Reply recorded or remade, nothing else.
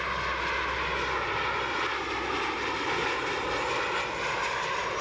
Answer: recorded